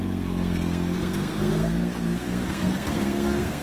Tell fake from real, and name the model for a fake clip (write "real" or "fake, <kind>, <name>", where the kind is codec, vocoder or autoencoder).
fake, codec, SNAC